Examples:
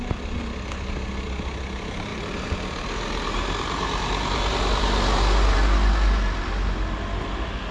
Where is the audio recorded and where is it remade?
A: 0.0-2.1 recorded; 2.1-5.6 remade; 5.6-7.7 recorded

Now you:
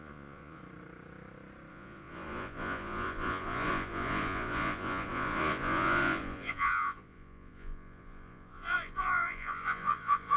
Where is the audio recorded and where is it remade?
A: 0.0-0.6 remade; 0.6-1.7 recorded; 1.7-10.4 remade

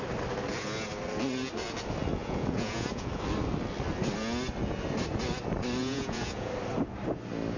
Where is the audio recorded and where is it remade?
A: 0.0-2.2 recorded; 2.2-3.1 remade; 3.1-5.8 recorded; 5.8-6.5 remade; 6.5-7.6 recorded

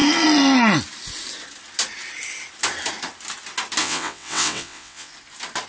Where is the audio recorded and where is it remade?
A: 0.0-3.8 recorded; 3.8-5.1 remade; 5.1-5.7 recorded

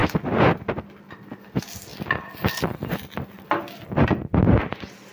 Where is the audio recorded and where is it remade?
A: 0.0-1.3 remade; 1.3-1.9 recorded; 1.9-5.1 remade

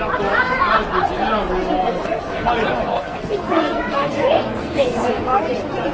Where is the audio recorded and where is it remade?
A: 0.0-1.8 recorded; 1.8-2.5 remade; 2.5-2.9 recorded; 2.9-5.4 remade; 5.4-5.9 recorded

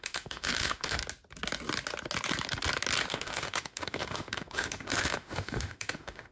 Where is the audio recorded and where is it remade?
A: 0.0-1.0 remade; 1.0-3.1 recorded; 3.1-6.3 remade